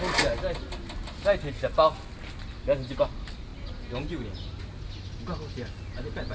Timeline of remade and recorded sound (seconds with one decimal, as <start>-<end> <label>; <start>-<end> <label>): 0.0-6.3 recorded